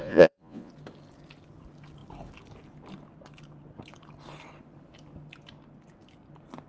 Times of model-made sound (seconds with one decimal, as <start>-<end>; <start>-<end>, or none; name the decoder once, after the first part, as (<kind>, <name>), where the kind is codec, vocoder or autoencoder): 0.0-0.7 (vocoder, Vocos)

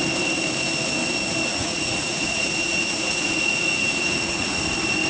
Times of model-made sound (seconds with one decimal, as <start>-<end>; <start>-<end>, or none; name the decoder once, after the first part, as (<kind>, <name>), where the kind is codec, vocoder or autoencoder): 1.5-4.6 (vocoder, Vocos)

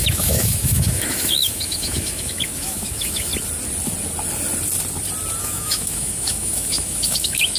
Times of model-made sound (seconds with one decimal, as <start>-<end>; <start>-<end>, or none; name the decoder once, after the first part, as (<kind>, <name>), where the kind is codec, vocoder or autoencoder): 0.0-3.3 (autoencoder, DAC-VAE); 5.4-7.6

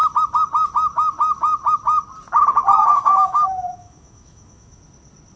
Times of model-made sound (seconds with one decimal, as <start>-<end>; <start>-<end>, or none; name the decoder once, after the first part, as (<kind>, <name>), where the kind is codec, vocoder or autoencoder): 2.8-4.8 (autoencoder, DAC-VAE)

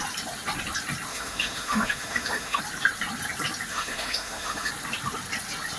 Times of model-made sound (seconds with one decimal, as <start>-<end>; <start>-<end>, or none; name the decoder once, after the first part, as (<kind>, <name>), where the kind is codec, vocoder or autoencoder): 1.1-2.6 (autoencoder, DAC-VAE); 3.7-4.7